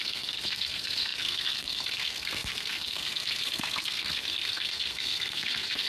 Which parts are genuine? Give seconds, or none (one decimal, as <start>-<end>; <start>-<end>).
none